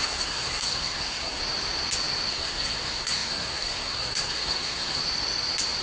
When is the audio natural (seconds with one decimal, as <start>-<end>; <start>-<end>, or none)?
1.4-2.3; 5.0-5.8